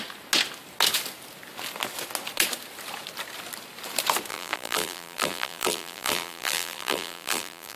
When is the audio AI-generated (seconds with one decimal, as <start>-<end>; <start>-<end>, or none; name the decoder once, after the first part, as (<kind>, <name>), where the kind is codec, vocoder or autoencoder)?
4.3-7.8 (vocoder, BigVGAN v2)